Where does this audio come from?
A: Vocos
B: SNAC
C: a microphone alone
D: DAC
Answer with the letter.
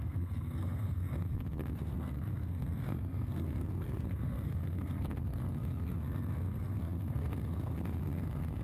B